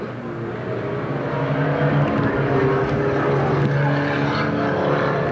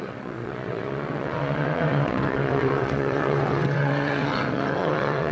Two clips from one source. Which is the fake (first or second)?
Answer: second